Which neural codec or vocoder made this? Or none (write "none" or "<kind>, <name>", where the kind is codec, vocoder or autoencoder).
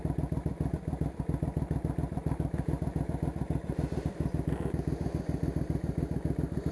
none